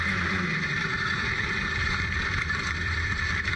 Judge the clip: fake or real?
fake